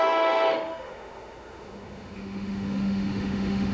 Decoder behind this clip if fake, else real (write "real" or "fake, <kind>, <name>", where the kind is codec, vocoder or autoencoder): fake, autoencoder, DAC-VAE